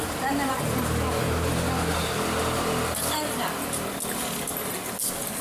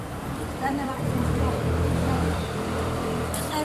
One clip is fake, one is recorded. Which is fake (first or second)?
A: second